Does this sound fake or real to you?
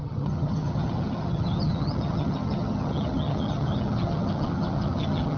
fake